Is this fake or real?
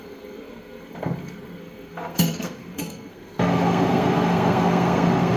fake